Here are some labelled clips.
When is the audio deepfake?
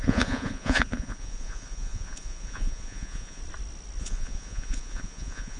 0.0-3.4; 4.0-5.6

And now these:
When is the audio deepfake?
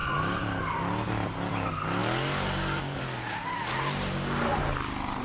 none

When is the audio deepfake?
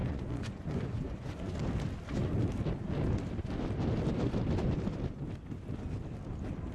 0.0-1.6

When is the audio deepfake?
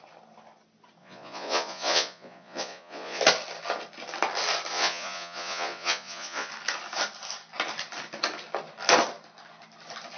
1.0-3.2; 4.7-6.5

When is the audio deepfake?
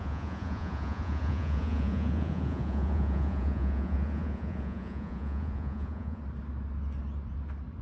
0.0-6.2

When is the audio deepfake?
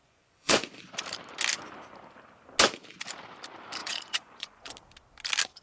0.0-0.8; 3.8-4.7